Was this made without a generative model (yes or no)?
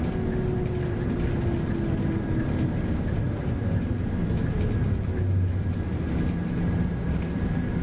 yes